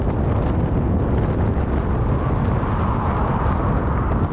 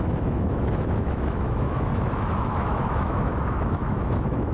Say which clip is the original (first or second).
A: first